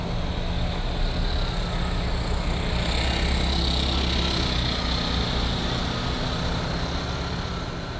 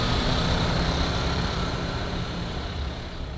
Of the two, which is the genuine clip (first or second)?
first